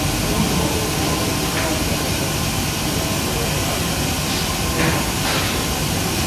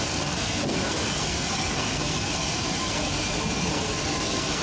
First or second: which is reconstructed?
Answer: second